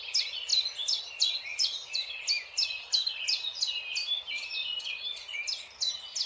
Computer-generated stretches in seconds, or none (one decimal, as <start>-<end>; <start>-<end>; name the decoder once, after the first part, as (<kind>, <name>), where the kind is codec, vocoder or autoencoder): none